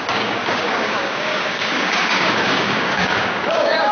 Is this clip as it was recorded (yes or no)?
no